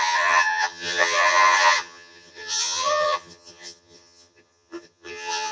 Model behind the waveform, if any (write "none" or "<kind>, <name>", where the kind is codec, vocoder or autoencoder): vocoder, HiFi-GAN